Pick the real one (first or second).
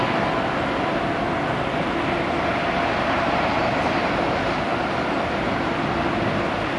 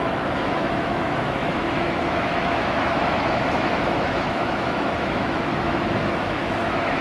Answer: first